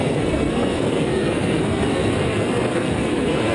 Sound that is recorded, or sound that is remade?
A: remade